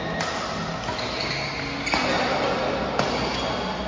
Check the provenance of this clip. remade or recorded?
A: recorded